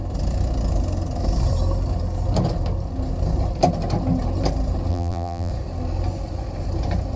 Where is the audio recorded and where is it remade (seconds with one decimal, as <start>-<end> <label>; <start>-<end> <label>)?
0.0-4.9 recorded; 4.9-5.5 remade; 5.5-7.2 recorded